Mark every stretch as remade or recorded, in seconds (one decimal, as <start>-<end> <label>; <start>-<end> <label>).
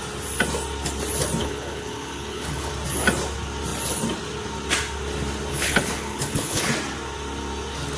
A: 0.0-1.4 recorded; 1.4-2.7 remade; 2.7-5.5 recorded; 5.5-6.7 remade; 6.7-8.0 recorded